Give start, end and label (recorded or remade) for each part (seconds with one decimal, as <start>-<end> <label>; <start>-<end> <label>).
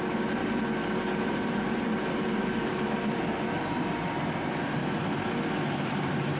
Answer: 0.0-0.4 remade; 0.4-1.3 recorded; 1.3-4.8 remade; 4.8-5.6 recorded; 5.6-6.4 remade